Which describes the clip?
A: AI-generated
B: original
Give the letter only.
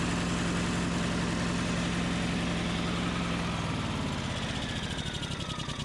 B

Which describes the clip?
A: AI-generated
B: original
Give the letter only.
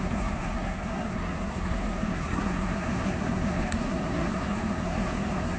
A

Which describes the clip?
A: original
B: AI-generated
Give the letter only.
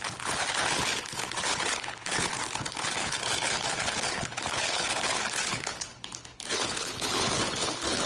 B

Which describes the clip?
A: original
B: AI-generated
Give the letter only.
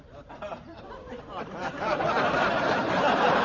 B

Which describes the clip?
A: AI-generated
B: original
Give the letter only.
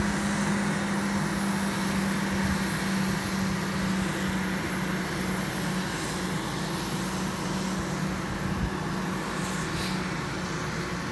B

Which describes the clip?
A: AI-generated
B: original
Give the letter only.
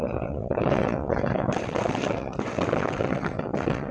A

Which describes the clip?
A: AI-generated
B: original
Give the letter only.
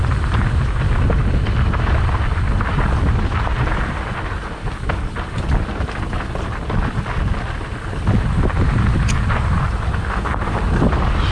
B